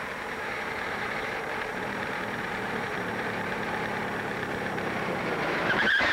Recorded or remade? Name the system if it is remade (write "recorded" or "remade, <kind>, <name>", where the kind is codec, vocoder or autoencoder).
remade, vocoder, BigVGAN v2